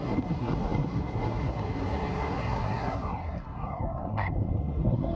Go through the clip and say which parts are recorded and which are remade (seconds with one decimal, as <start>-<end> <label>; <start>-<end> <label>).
0.0-5.2 remade